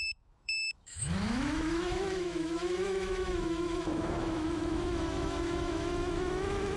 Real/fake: fake